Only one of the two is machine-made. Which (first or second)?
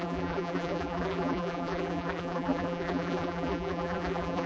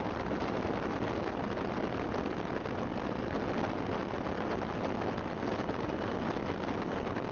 first